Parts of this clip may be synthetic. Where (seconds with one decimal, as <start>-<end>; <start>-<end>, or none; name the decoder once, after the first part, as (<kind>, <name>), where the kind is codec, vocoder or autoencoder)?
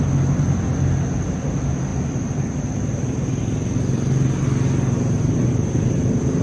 none